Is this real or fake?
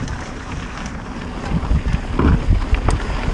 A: real